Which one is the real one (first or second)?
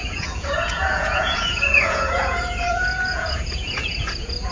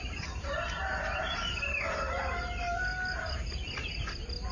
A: second